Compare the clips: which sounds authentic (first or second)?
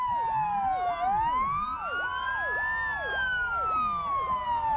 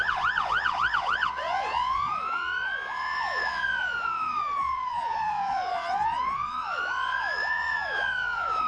first